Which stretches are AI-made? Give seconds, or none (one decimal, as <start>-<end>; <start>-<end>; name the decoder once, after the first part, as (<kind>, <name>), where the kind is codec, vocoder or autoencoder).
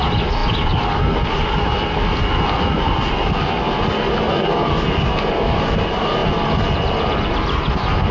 none